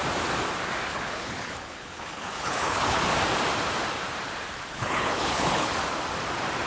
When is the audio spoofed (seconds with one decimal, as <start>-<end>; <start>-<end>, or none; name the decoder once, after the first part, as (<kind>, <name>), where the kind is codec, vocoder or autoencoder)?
0.9-3.0 (codec, HILCodec); 4.7-5.7